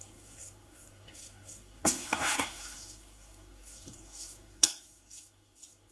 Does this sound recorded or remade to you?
remade